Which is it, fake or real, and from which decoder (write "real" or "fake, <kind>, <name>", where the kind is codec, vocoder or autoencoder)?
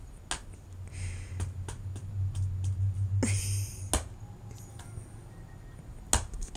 real